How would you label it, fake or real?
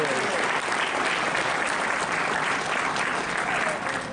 real